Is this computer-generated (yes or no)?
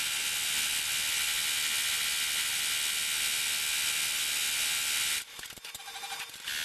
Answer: no